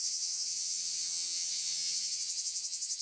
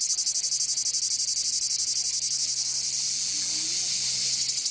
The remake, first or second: first